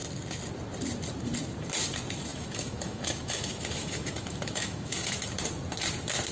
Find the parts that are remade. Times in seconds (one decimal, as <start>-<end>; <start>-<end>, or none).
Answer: 2.3-5.3